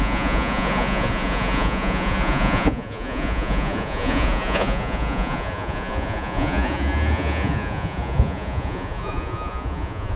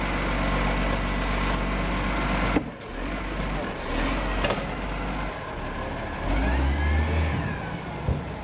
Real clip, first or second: second